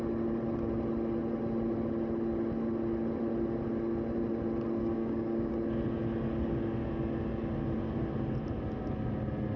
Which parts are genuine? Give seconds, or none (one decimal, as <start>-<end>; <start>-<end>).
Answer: 0.0-4.8; 5.5-9.6